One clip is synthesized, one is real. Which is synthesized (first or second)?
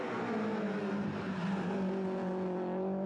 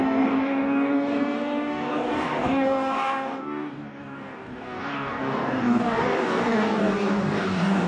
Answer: second